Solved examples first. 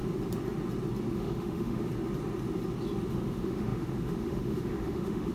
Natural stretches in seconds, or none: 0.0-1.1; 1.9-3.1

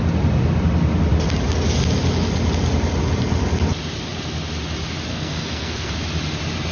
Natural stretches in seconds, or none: 0.0-5.1; 5.9-6.7

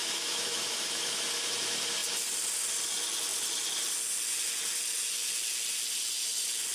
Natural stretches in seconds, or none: 1.4-6.7

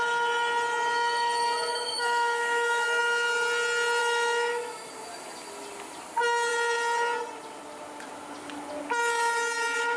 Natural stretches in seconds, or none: 0.0-1.7; 3.0-4.0; 4.9-10.0